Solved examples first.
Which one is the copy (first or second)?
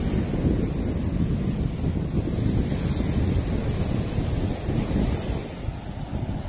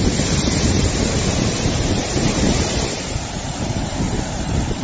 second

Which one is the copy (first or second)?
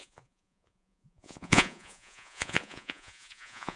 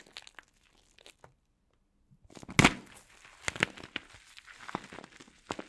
first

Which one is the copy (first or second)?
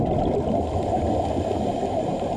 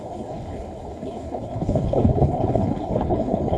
second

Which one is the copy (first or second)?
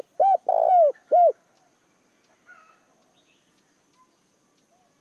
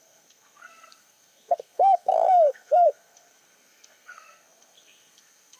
second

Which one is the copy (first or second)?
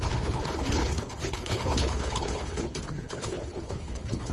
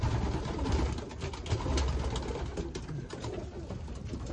first